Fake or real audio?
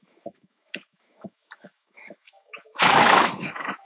fake